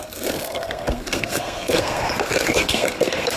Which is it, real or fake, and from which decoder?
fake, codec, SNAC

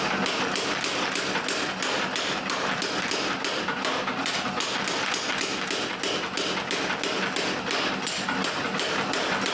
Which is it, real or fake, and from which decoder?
real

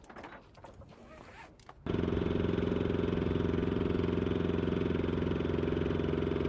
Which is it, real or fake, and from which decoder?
real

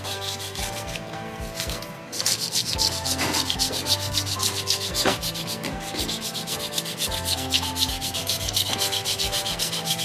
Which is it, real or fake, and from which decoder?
fake, codec, SNAC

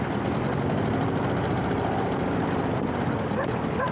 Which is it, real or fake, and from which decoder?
real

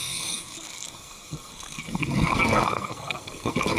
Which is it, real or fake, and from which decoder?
fake, codec, SNAC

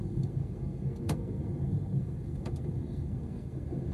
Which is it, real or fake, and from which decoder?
fake, codec, SNAC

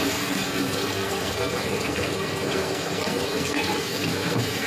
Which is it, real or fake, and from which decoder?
fake, codec, SNAC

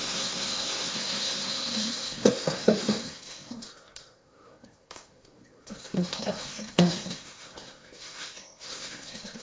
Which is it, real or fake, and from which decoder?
fake, codec, SNAC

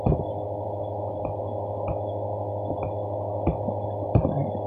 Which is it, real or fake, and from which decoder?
real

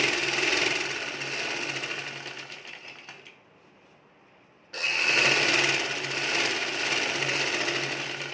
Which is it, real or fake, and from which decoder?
real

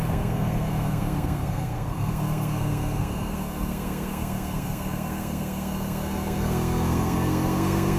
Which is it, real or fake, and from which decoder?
fake, codec, SNAC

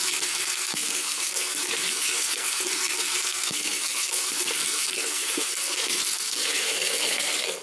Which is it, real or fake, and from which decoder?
fake, codec, SNAC